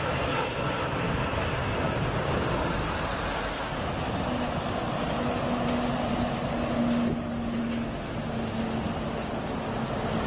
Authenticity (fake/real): real